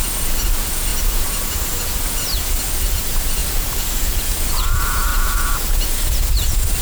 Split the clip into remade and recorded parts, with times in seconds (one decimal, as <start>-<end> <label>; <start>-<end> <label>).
0.0-6.8 remade